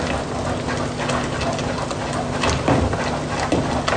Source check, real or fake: real